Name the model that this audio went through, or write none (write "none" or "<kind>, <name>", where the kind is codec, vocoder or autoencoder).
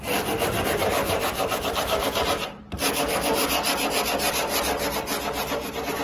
none